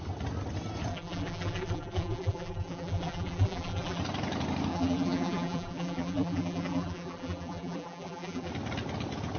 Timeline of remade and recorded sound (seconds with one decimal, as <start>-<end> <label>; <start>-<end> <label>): 0.0-0.9 recorded; 0.9-4.0 remade; 4.0-4.7 recorded; 4.7-8.5 remade; 8.5-9.4 recorded